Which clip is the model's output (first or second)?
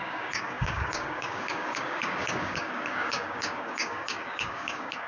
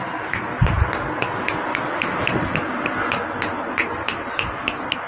first